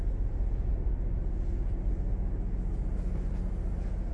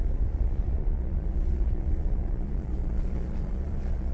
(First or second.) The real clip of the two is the first